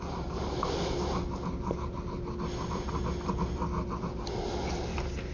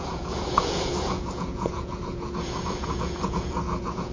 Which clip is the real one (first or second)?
first